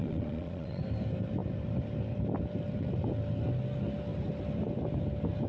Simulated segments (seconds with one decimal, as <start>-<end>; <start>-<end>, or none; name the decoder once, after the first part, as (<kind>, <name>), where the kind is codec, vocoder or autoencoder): 0.0-0.8 (vocoder, Vocos)